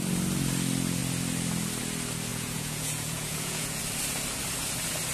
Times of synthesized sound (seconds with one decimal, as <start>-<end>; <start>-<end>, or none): 2.3-3.8